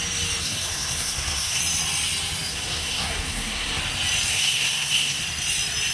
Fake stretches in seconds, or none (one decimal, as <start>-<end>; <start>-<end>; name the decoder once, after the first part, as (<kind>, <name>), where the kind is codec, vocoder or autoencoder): 0.4-1.6 (codec, SNAC); 2.5-3.8; 4.3-5.2